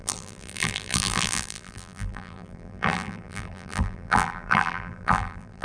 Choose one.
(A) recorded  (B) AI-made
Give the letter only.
B